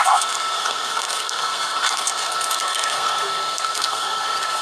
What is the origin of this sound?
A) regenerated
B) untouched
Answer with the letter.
A